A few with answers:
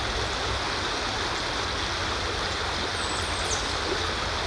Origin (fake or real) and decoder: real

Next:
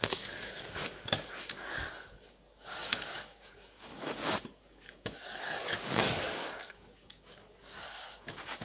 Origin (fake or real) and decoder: fake, codec, DAC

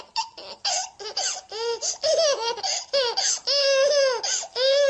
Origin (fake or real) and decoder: real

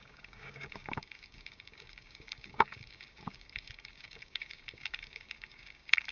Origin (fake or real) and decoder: fake, codec, DAC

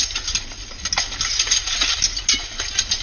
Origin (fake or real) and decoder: real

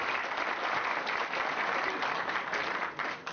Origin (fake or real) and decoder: real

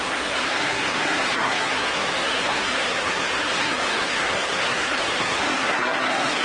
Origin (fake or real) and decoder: fake, codec, SNAC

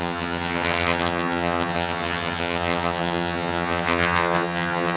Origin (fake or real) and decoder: fake, vocoder, HiFi-GAN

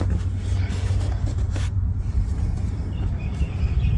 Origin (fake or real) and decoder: real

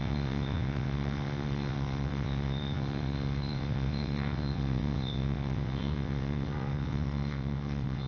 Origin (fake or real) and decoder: fake, vocoder, WaveNeXt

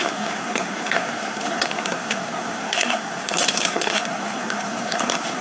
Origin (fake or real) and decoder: fake, codec, SNAC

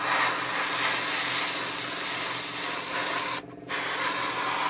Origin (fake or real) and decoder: real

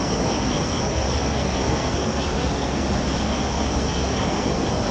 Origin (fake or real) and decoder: fake, codec, SNAC